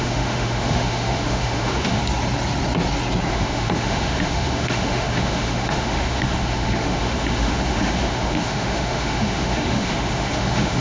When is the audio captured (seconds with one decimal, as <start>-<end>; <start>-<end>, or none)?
2.0-3.3